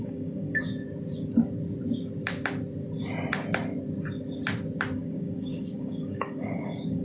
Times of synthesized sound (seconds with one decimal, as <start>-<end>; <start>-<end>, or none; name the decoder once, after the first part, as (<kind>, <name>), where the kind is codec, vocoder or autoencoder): 0.0-0.7 (codec, DAC); 4.9-7.0